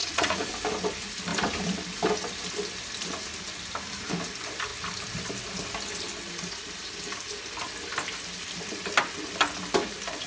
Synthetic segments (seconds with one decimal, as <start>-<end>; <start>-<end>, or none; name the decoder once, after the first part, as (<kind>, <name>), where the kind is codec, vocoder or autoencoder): 0.0-0.5 (vocoder, Vocos)